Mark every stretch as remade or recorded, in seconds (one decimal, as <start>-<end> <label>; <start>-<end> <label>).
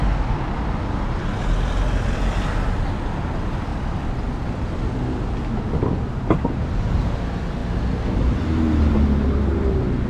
0.0-3.7 recorded; 3.7-4.7 remade; 4.7-10.1 recorded